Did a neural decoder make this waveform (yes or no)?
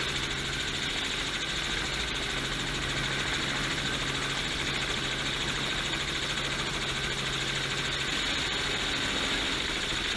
no